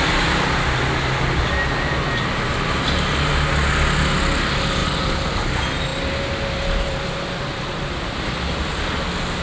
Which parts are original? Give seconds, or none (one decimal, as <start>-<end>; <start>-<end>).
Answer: 0.0-9.4